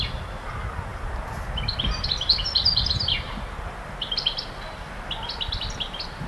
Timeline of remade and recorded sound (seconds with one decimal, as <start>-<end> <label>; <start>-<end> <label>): 0.0-6.3 recorded